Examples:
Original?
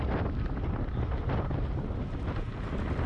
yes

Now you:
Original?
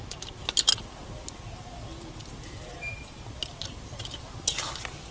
yes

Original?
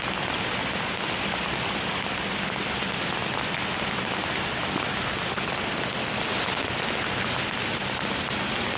yes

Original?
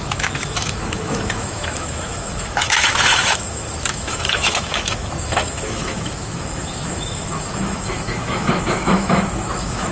no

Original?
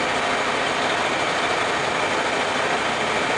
yes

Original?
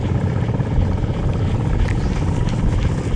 yes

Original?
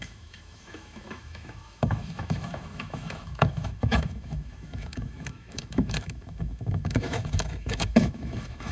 no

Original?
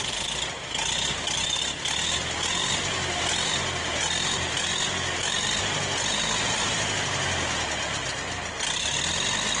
yes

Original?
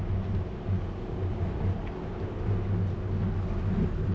yes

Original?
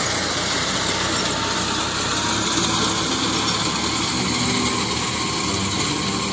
yes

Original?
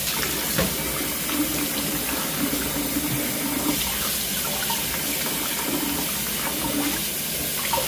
yes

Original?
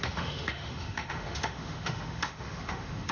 no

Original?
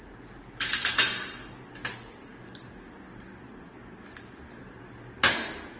yes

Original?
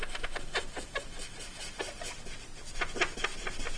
yes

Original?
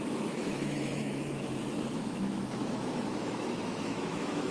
no